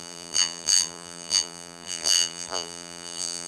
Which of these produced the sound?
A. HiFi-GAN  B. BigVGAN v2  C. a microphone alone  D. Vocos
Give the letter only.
B